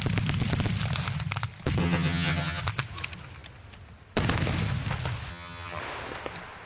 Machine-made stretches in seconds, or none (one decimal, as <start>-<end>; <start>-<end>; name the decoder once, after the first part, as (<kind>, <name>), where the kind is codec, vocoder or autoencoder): 1.8-2.6 (vocoder, HiFi-GAN); 5.3-5.8